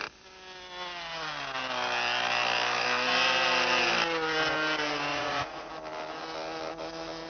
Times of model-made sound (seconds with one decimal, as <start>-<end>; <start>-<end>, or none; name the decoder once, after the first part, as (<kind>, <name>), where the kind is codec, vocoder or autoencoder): 5.1-5.7 (vocoder, Vocos)